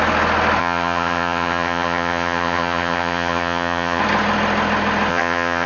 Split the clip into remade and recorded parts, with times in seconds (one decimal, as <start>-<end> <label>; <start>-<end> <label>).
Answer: 0.0-0.6 recorded; 0.6-4.0 remade; 4.0-5.1 recorded; 5.1-5.7 remade